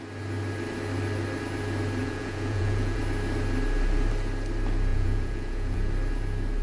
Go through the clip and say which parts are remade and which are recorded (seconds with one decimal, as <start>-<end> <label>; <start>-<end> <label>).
0.0-2.0 recorded; 2.0-3.0 remade; 3.0-4.9 recorded; 4.9-5.9 remade; 5.9-6.6 recorded